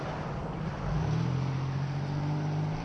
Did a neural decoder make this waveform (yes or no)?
no